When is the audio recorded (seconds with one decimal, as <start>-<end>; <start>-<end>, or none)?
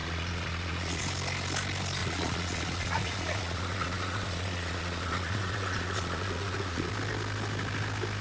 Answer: 1.0-2.0; 6.9-8.2